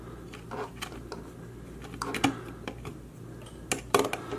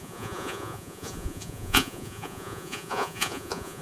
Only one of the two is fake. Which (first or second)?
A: second